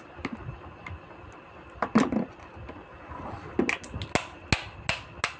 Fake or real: real